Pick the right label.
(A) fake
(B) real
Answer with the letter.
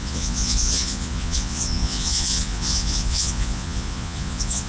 A